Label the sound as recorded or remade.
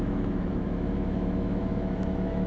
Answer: remade